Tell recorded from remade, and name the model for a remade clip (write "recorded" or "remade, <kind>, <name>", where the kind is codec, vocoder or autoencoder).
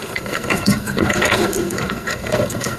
remade, codec, SNAC